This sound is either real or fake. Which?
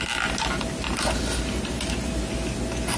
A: real